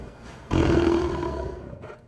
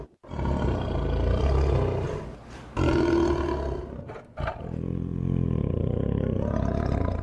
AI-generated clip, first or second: first